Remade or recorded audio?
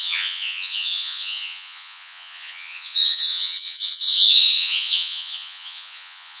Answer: remade